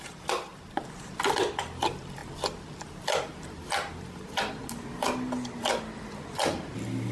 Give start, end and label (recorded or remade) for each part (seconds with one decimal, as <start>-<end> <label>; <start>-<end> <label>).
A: 0.0-0.5 recorded; 0.5-1.2 remade; 1.2-7.1 recorded